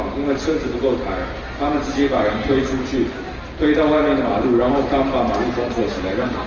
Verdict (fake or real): real